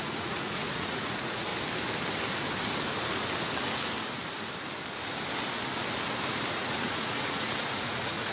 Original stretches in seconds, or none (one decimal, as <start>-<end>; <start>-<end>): 1.5-6.5